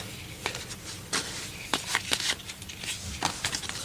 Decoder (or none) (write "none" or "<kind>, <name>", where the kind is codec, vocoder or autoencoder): none